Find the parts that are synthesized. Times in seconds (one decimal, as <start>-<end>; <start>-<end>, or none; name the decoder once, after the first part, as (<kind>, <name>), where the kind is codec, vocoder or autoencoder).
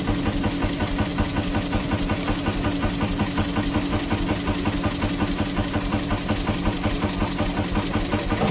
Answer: none